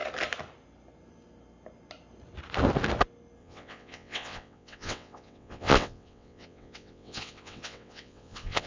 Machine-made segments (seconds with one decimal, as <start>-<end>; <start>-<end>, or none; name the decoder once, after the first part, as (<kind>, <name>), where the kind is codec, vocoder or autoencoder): 3.4-8.7 (vocoder, WaveNeXt)